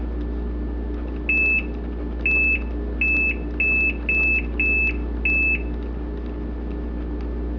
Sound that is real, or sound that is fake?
real